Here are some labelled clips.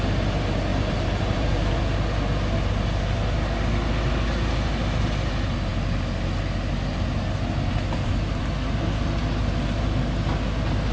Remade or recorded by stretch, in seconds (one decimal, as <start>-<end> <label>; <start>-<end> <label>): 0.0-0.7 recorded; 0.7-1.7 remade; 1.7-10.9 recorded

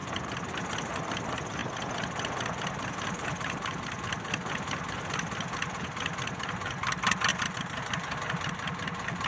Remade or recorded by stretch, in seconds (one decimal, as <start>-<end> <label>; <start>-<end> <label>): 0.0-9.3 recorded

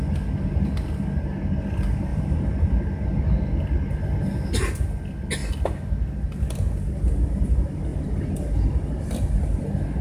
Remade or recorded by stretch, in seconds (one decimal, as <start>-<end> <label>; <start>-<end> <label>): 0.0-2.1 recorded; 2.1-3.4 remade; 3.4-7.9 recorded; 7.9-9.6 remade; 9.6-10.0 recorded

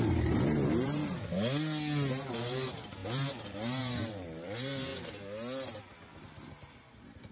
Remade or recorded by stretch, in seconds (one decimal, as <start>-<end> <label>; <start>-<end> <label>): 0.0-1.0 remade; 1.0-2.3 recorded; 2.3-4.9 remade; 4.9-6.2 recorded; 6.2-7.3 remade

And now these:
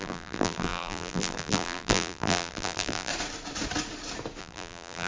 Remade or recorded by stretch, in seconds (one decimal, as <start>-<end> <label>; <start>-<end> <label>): 0.0-3.1 remade; 3.1-4.4 recorded; 4.4-5.1 remade

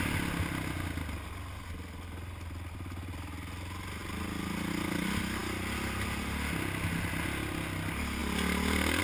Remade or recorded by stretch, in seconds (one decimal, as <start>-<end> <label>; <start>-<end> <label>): 0.0-9.0 recorded

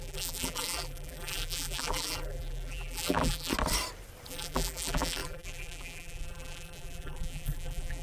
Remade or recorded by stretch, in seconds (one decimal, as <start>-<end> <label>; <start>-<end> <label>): 0.0-3.5 remade; 3.5-4.3 recorded; 4.3-8.0 remade